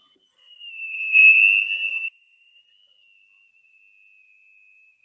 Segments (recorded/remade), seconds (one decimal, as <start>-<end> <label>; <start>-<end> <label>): 0.0-0.4 recorded; 0.4-1.4 remade; 1.4-1.9 recorded; 1.9-2.6 remade; 2.6-5.0 recorded